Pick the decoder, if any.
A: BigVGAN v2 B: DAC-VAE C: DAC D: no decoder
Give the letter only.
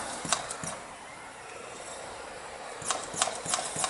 A